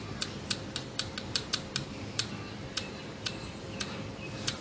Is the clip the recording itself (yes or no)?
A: yes